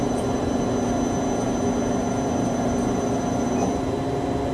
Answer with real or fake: real